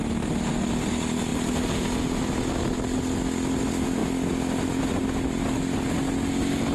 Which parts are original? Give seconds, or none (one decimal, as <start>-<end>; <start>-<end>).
0.0-6.7